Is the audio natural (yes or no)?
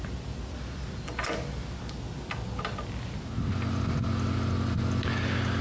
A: yes